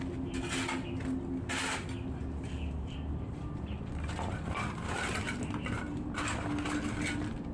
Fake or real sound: real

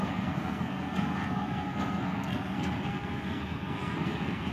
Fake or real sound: fake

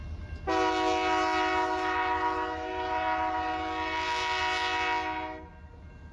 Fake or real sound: real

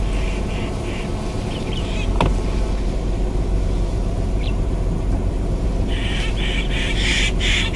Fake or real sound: fake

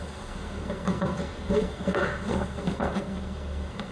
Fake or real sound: fake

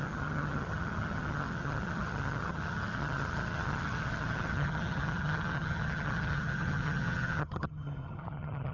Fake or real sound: fake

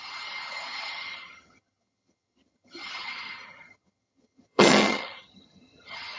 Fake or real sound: fake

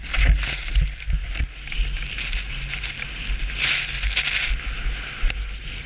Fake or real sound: real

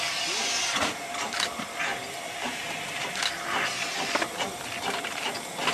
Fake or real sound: real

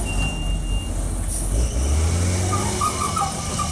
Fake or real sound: real